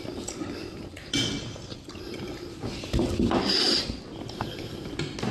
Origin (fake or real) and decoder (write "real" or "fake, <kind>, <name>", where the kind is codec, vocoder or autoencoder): real